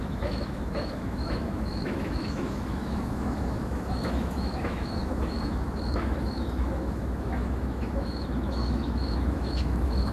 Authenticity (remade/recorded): remade